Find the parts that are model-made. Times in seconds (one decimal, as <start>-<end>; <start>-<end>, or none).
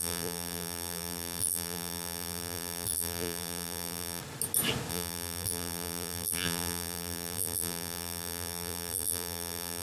0.0-4.2; 4.9-9.8